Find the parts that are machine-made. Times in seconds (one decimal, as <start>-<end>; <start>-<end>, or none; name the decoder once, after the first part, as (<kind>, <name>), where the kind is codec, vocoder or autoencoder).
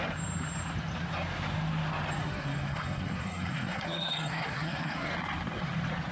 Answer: 2.2-5.1 (codec, SNAC)